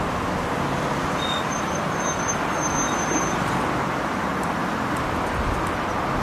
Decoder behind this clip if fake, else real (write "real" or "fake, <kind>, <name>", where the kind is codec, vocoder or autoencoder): real